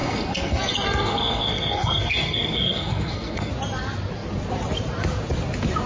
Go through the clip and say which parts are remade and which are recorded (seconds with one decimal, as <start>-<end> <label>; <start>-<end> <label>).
0.0-3.5 remade; 3.5-5.9 recorded